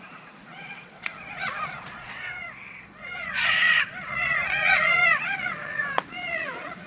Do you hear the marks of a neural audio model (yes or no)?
yes